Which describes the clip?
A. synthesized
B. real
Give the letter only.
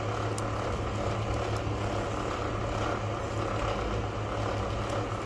B